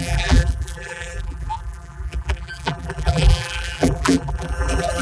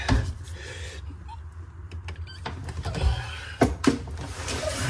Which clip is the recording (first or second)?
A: second